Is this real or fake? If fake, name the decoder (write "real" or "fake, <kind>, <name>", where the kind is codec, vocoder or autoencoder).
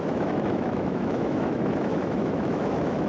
fake, autoencoder, DAC-VAE